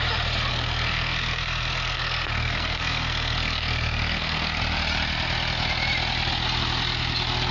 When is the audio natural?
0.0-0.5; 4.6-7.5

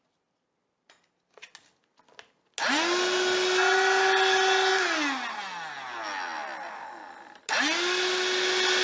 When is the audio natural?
0.0-8.8

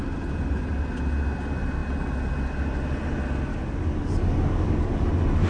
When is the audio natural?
0.0-3.5; 5.1-5.5

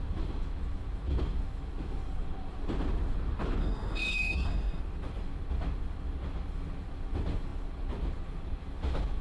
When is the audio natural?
0.0-3.6; 4.8-9.2

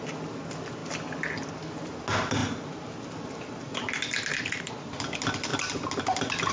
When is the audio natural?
0.0-6.5

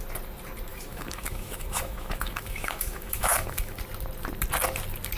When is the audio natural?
0.0-0.7; 3.8-5.2

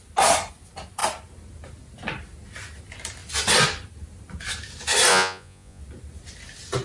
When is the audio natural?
0.0-5.1; 5.8-6.8